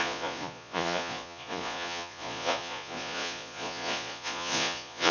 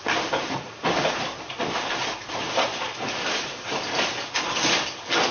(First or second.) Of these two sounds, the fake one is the first